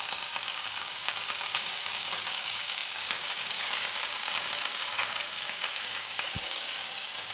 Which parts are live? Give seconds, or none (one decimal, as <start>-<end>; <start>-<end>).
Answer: none